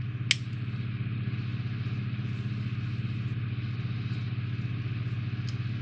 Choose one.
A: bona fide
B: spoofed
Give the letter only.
A